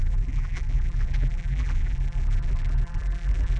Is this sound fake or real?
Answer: fake